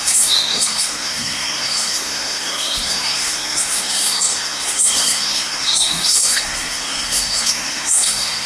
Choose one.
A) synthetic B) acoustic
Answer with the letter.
A